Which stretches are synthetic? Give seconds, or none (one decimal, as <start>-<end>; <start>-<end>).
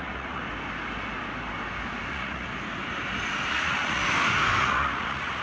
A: 0.0-0.4; 2.1-2.5; 3.5-4.0; 4.6-5.4